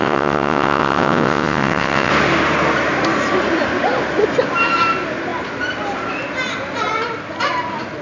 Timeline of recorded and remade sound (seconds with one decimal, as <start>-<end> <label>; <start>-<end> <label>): 0.0-2.1 remade; 2.1-8.0 recorded